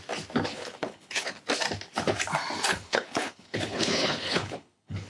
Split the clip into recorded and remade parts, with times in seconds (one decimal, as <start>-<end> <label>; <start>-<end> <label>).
0.0-0.5 recorded; 0.5-1.4 remade; 1.4-2.7 recorded; 2.7-5.1 remade